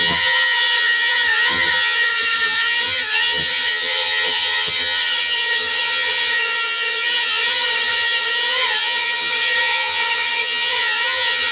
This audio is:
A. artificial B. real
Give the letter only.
A